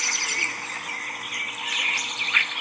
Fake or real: real